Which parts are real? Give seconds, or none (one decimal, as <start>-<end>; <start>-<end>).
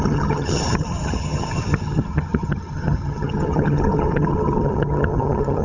none